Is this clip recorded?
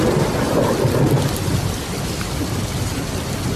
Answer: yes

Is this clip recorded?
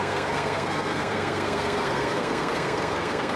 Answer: no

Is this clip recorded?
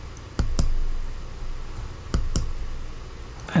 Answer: yes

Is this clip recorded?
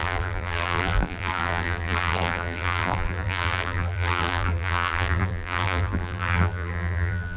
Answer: no